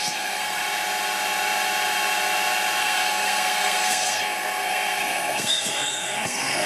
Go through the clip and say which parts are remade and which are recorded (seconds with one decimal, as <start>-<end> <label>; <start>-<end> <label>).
0.0-0.6 remade; 0.6-2.8 recorded; 2.8-6.7 remade